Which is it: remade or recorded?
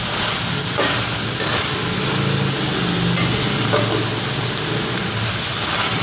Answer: recorded